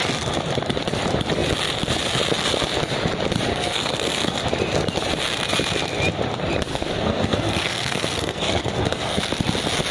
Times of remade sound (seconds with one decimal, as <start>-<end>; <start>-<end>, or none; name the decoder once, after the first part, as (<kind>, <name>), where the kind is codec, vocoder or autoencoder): 3.5-4.4 (codec, SNAC); 6.7-9.2